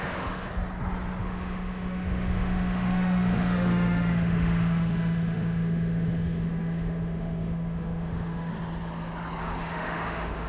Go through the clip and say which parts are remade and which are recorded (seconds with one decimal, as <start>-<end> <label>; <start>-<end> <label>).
0.0-0.5 remade; 0.5-1.2 recorded; 1.2-8.5 remade; 8.5-9.4 recorded; 9.4-10.5 remade